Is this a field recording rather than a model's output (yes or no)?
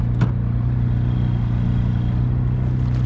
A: yes